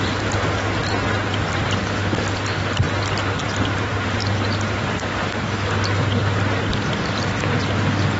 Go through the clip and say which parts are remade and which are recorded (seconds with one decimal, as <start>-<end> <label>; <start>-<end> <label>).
0.0-0.8 recorded; 0.8-3.4 remade; 3.4-4.2 recorded; 4.2-6.6 remade; 6.6-8.2 recorded